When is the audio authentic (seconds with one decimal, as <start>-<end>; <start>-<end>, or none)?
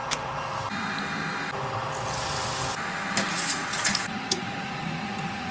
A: 0.0-3.3